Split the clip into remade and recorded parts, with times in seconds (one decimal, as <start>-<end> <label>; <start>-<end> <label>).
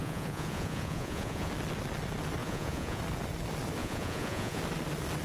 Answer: 0.0-1.5 remade; 1.5-2.4 recorded; 2.4-3.0 remade; 3.0-3.8 recorded; 3.8-4.6 remade; 4.6-5.2 recorded